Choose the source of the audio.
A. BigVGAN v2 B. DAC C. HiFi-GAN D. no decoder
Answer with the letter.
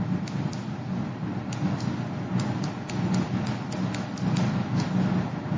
D